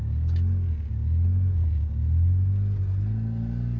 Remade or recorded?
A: recorded